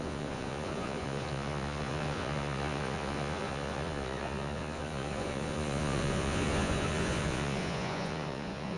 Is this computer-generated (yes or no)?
yes